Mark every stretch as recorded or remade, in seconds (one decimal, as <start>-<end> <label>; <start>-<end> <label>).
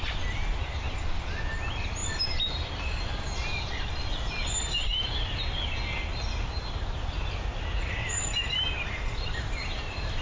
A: 0.0-8.0 recorded; 8.0-10.2 remade